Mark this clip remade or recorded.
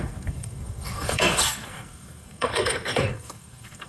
remade